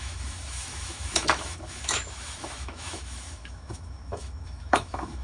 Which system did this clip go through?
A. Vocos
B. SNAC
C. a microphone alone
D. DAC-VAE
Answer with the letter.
D